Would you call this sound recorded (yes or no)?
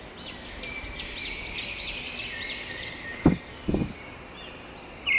yes